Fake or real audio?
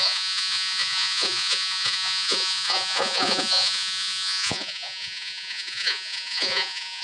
fake